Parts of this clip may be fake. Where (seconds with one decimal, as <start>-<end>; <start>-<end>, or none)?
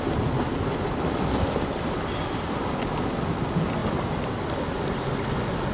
none